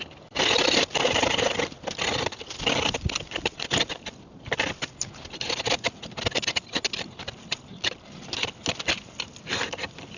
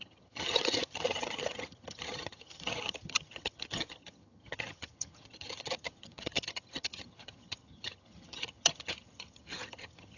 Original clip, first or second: first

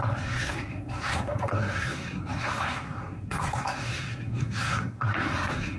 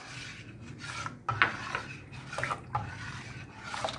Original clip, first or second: second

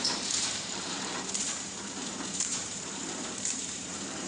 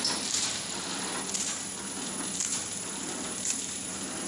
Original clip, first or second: second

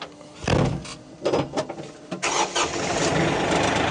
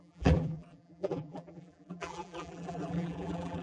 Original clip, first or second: first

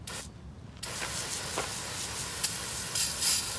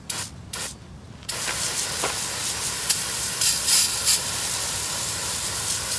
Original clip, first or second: first